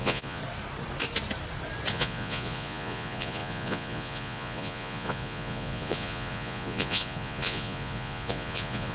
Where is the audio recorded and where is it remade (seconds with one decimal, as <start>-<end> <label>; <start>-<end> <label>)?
0.0-0.4 remade; 0.4-1.9 recorded; 1.9-8.9 remade